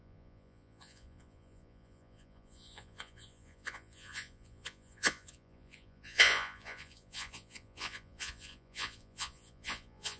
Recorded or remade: remade